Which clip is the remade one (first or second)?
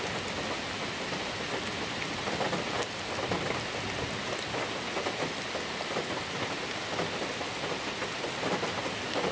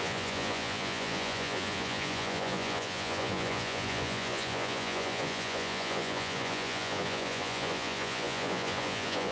second